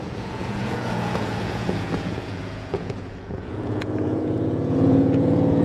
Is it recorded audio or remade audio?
remade